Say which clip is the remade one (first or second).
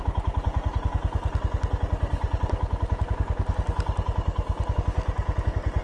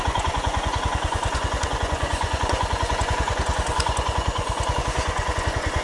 second